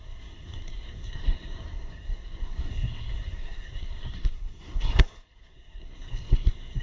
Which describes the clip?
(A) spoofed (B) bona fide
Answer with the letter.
A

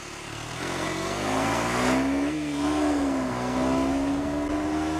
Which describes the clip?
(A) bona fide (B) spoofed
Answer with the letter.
B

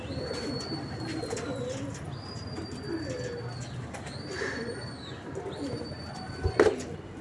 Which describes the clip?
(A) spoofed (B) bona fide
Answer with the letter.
B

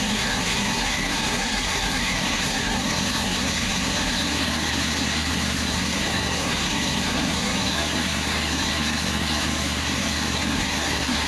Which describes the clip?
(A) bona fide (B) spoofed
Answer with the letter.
B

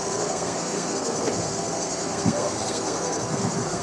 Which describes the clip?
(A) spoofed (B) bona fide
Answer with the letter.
A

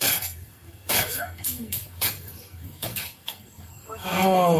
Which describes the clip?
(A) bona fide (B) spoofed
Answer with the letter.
B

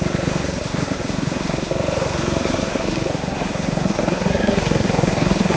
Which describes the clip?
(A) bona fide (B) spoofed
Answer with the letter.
B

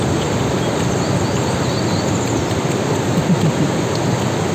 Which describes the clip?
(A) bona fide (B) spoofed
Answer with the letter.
A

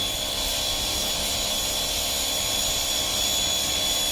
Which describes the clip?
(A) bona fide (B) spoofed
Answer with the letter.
A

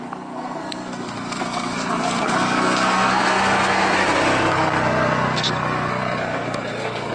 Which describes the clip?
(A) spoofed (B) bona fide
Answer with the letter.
A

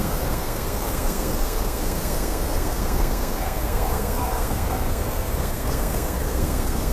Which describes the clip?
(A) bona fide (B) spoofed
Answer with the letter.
B